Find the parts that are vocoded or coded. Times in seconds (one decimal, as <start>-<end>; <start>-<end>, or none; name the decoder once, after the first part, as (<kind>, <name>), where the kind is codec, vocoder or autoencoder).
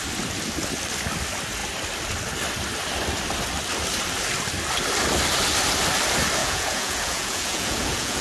6.4-8.2 (vocoder, Vocos)